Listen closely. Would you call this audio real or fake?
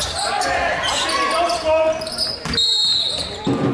real